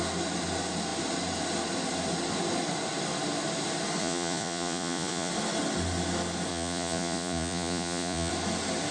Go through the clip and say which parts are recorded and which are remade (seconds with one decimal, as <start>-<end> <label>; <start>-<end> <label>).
0.0-4.0 recorded; 4.0-5.3 remade; 5.3-6.5 recorded; 6.5-8.3 remade; 8.3-8.9 recorded